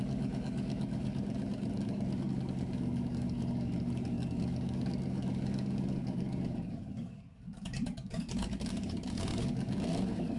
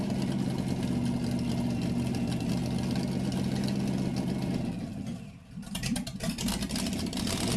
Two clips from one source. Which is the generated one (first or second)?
first